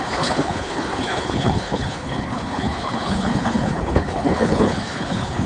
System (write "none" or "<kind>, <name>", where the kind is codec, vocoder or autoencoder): codec, HILCodec